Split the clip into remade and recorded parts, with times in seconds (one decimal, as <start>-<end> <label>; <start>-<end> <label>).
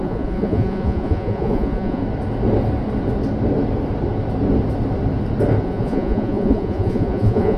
0.0-2.0 remade; 2.0-5.6 recorded; 5.6-7.6 remade